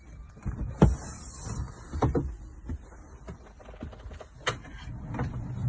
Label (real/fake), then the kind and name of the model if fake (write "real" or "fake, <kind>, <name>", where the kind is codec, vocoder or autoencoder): real